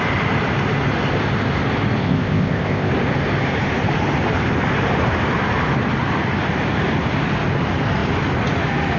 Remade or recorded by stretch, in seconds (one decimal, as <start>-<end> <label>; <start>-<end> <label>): 0.0-2.0 recorded; 2.0-2.9 remade; 2.9-9.0 recorded